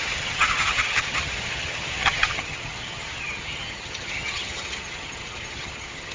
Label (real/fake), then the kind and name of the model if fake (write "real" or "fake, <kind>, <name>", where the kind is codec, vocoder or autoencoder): fake, vocoder, HiFi-GAN